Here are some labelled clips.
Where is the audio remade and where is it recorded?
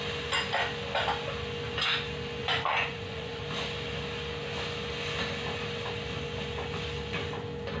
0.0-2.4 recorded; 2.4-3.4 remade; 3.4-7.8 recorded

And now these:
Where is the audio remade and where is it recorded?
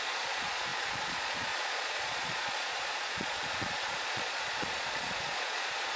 0.0-6.0 remade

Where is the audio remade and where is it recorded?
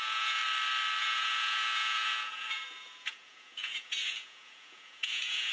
0.0-0.4 remade; 0.4-1.0 recorded; 1.0-5.5 remade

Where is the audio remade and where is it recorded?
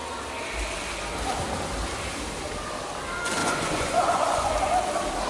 0.0-3.4 recorded; 3.4-4.7 remade; 4.7-5.3 recorded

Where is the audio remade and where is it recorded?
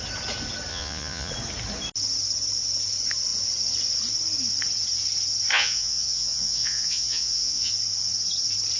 0.0-0.7 recorded; 0.7-1.3 remade; 1.3-5.5 recorded; 5.5-7.7 remade; 7.7-8.8 recorded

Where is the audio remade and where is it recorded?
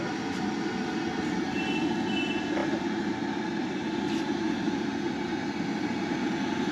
0.0-6.7 recorded